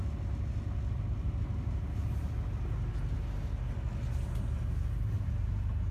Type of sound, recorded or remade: recorded